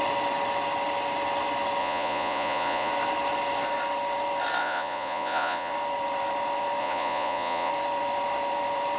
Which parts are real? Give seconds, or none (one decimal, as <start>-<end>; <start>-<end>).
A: 0.0-1.8; 2.9-4.6; 5.7-6.8; 7.7-9.0

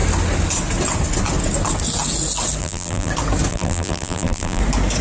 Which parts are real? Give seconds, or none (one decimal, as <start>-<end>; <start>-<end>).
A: 0.0-2.6; 3.1-3.5; 4.6-5.0